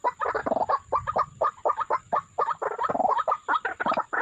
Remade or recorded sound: recorded